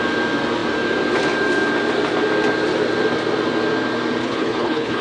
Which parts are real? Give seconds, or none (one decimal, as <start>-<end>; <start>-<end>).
0.0-4.2